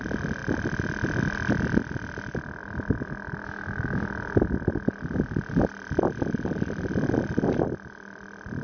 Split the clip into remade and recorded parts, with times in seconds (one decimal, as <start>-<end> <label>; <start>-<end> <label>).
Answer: 0.0-8.6 recorded